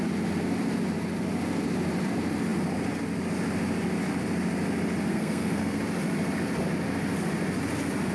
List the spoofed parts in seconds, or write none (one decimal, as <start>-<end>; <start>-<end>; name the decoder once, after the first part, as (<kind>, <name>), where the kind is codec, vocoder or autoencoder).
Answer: 5.1-5.8 (codec, SNAC)